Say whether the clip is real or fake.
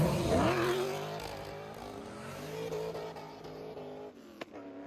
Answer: real